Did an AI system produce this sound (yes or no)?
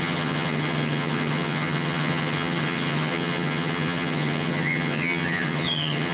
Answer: yes